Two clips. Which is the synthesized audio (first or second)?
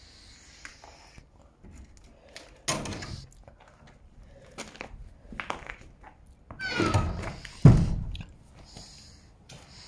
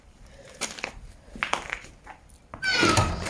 second